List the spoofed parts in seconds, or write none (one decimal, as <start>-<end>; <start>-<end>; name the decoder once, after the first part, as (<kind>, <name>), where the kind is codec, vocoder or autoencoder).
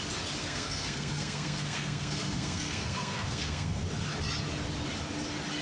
0.4-3.8 (codec, SNAC)